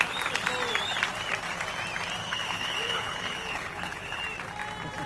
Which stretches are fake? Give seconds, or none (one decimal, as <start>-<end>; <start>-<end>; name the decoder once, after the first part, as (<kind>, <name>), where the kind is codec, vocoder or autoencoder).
2.2-4.2 (codec, HILCodec)